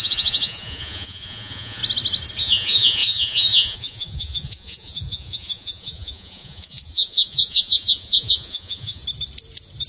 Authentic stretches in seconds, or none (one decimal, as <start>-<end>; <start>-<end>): 1.8-2.4; 9.0-9.9